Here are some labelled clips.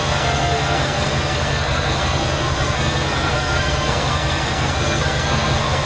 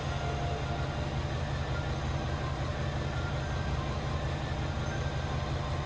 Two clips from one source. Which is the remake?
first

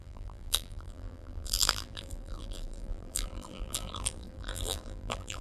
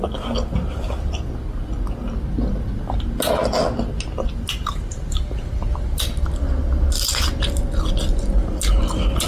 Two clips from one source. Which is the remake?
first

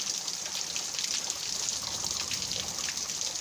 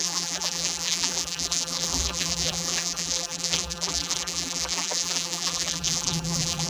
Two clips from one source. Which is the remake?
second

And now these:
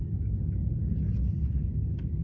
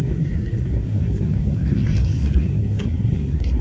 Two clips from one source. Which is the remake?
second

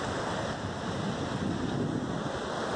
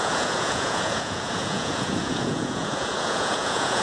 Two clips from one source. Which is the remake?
second